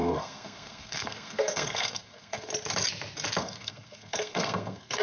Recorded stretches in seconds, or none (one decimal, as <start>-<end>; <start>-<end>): 2.5-3.4